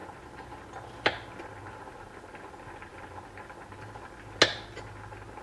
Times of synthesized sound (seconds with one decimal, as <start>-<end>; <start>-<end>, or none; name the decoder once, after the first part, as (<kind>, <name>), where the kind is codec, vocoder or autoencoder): none